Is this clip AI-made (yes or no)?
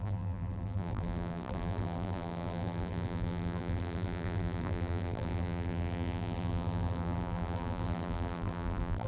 yes